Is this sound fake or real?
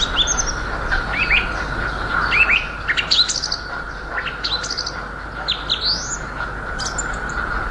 real